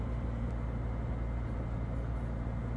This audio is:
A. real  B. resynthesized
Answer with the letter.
A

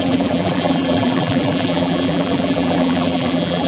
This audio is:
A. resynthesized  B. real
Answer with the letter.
A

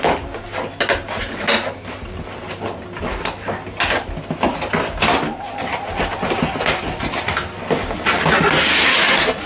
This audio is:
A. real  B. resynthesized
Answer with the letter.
A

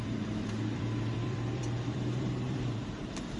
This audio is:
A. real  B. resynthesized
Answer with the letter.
B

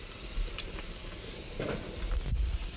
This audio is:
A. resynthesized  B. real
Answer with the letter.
A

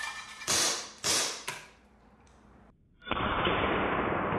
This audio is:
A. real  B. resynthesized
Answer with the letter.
B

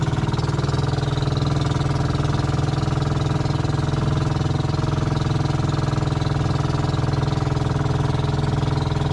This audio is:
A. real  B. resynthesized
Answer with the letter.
A